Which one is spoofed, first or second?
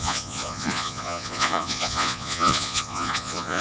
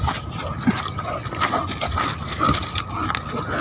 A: first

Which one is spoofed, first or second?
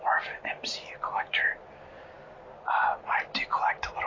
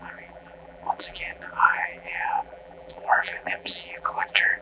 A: second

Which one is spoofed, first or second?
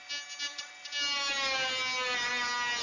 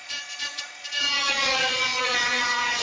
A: second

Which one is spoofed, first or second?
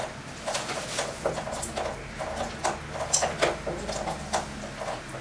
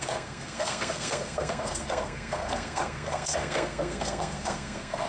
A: second